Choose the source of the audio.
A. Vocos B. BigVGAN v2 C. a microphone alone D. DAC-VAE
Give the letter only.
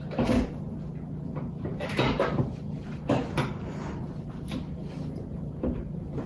C